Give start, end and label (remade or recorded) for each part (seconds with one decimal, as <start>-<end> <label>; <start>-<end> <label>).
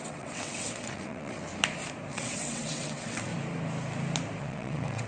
0.0-1.5 remade; 1.5-2.1 recorded; 2.1-3.3 remade; 3.3-4.4 recorded; 4.4-5.1 remade